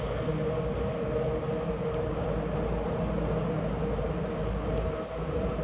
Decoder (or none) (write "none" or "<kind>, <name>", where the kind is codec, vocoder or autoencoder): none